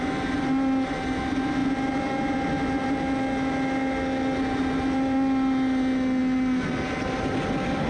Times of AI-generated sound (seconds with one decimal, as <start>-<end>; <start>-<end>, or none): none